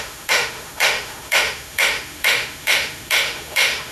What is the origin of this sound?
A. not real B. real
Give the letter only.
A